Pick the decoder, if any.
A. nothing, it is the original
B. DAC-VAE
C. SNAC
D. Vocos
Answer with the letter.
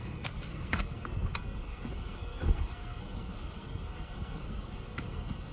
C